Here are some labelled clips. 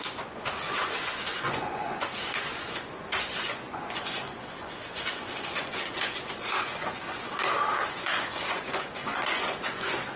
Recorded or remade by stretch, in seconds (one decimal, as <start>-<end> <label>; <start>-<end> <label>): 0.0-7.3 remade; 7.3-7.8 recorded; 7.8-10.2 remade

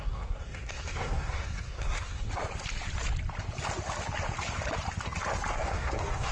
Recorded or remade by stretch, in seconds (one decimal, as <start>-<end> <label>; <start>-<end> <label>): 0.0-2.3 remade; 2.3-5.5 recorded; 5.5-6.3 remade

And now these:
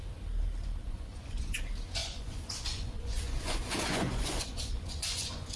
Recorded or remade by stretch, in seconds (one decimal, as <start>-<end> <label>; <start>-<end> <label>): 0.0-0.8 recorded; 0.8-1.6 remade; 1.6-2.0 recorded; 2.0-5.6 remade